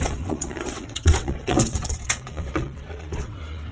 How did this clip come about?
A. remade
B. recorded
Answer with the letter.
A